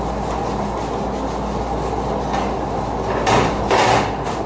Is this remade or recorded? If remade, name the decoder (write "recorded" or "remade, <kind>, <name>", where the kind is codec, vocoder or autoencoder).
recorded